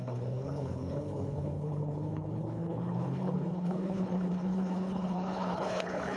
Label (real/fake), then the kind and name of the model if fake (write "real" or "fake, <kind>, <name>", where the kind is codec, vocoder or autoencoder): fake, codec, HILCodec